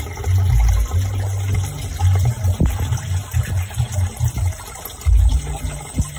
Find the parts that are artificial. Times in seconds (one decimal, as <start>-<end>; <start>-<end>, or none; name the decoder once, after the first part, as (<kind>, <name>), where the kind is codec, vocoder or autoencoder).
none